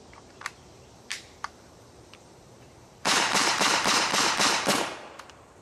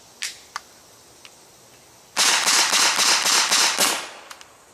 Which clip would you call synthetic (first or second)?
first